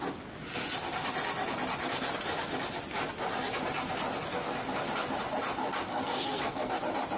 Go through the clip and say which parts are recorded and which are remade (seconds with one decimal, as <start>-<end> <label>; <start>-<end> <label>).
0.0-5.9 recorded; 5.9-6.8 remade; 6.8-7.2 recorded